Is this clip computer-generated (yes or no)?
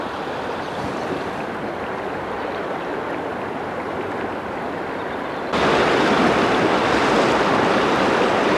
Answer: no